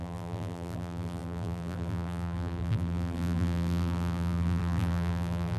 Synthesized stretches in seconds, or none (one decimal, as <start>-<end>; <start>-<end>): 0.0-5.6

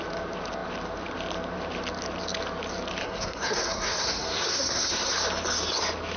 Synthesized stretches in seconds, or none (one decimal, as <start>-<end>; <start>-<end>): 3.0-5.1